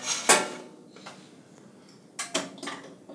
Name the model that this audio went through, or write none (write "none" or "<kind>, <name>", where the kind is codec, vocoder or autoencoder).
none